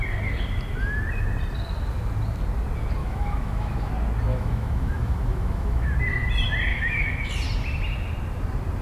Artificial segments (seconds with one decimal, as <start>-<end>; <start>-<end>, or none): 3.0-3.9; 4.3-6.0; 6.7-7.3